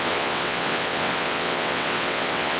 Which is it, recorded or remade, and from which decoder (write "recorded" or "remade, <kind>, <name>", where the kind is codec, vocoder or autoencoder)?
remade, vocoder, WaveNeXt